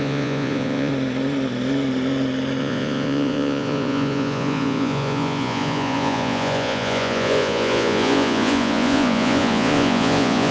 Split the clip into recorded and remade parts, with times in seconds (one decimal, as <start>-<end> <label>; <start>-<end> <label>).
0.0-0.9 remade; 0.9-2.6 recorded; 2.6-10.5 remade